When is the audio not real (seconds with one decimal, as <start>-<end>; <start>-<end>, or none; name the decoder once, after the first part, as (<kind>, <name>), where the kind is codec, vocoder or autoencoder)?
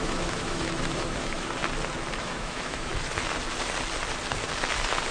0.0-1.6 (autoencoder, DAC-VAE); 2.2-2.9